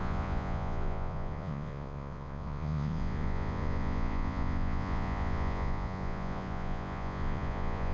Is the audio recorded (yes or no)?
no